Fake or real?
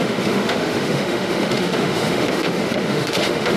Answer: fake